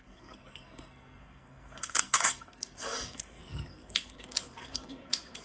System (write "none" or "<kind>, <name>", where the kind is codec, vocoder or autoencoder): codec, SNAC